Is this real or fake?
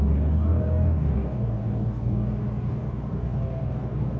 fake